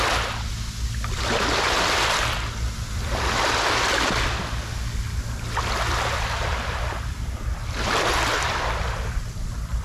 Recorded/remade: recorded